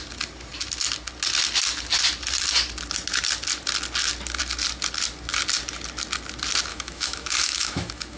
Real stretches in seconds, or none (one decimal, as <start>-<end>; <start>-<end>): 0.0-6.7

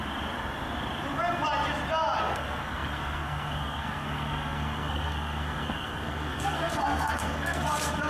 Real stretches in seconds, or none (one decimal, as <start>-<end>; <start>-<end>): 0.0-2.2

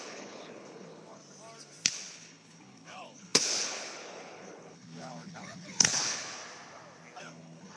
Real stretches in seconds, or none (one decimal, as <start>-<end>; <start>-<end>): 1.2-1.9; 6.4-7.2

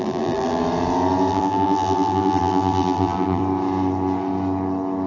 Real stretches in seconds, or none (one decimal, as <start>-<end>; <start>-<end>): 0.6-1.3; 3.4-5.1